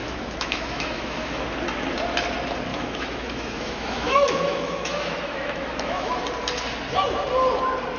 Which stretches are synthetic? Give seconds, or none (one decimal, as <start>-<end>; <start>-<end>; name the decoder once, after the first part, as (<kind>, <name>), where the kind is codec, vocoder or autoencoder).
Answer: 0.0-1.4 (autoencoder, DAC-VAE); 2.7-6.1